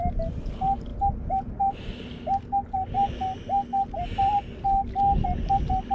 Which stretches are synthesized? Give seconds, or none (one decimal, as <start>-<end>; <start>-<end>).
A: none